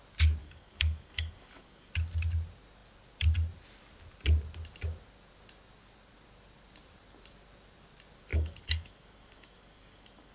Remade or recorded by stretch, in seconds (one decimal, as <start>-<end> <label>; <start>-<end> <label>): 0.0-0.4 recorded; 0.4-1.9 remade; 1.9-8.3 recorded; 8.3-10.3 remade